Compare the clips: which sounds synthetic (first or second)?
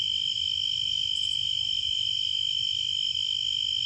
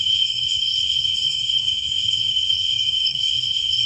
second